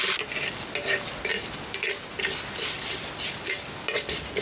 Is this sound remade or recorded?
recorded